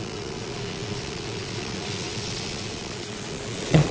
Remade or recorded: remade